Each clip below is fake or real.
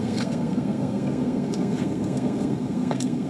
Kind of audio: fake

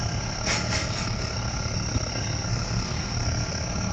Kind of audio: fake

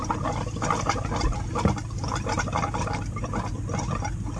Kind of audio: real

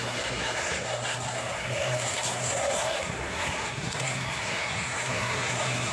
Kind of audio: fake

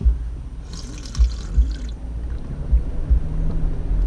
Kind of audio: real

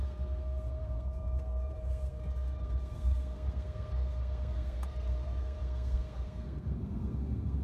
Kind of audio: fake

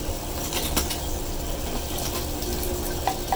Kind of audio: real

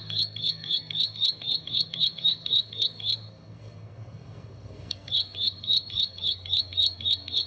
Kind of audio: fake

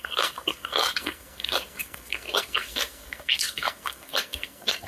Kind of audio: fake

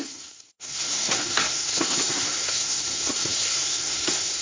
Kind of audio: fake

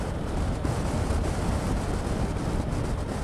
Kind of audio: real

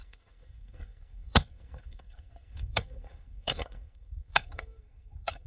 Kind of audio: fake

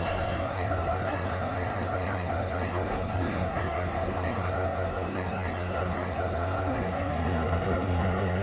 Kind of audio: fake